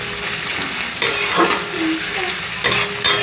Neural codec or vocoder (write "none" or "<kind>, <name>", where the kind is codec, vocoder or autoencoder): none